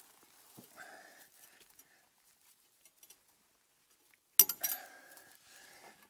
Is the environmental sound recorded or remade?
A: recorded